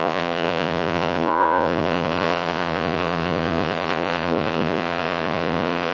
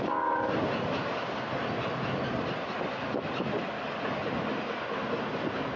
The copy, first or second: first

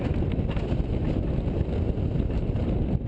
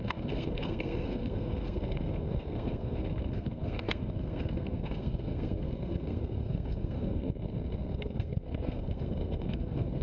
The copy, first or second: second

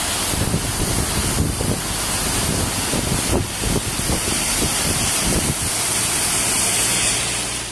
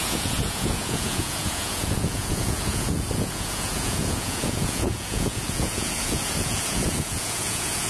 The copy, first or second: second